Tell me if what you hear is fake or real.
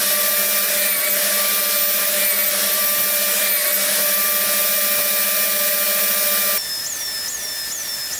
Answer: real